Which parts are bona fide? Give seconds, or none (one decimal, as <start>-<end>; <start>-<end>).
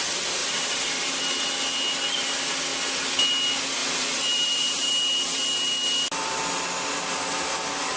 0.0-0.4; 1.2-3.8; 4.9-8.0